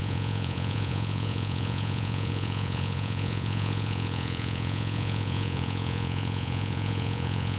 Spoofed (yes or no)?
yes